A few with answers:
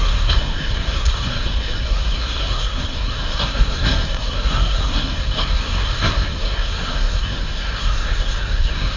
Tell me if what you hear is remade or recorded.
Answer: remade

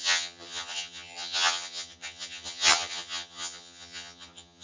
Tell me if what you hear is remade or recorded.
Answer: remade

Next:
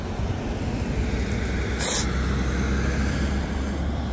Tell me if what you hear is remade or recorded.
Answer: recorded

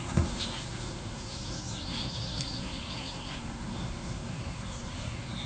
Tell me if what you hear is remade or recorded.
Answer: remade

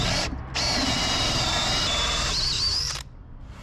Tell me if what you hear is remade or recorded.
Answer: recorded